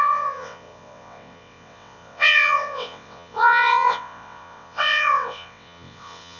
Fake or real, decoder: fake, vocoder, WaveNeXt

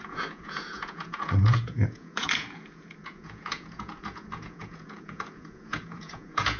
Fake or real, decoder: fake, vocoder, Vocos